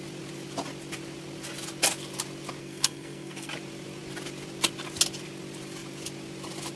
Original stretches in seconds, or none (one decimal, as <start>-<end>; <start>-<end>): 0.0-2.6; 3.5-6.8

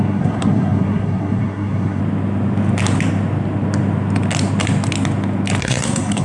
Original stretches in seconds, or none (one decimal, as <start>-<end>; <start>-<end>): 2.0-5.6

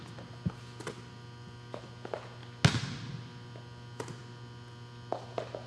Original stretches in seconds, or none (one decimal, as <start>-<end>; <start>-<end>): 0.0-5.7

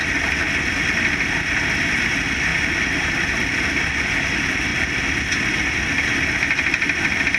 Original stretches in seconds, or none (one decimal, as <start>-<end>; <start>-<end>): 0.0-7.4

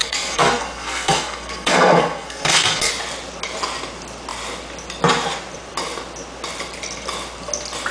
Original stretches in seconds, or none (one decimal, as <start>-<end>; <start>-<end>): 2.9-7.9